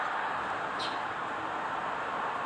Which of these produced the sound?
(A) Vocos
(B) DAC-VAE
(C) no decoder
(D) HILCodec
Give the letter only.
C